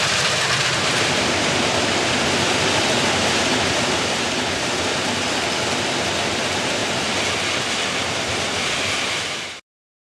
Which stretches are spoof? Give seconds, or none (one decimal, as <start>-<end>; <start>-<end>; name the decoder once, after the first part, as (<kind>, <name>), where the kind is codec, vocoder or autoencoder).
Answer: 0.0-6.8 (vocoder, BigVGAN v2); 8.0-10.1